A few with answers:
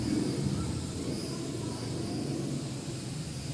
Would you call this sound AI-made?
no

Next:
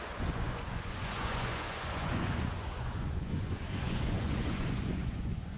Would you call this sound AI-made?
yes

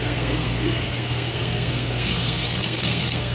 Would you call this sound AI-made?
yes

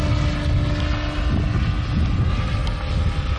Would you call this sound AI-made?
no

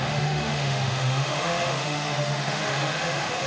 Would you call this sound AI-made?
yes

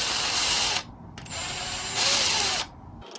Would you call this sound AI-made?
no